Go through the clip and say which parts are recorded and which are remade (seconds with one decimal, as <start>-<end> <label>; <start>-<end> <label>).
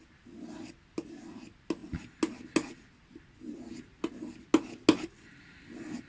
0.0-6.1 recorded